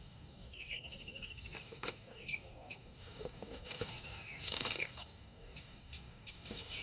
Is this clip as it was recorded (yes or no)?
no